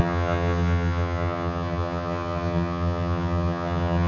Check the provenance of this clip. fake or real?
fake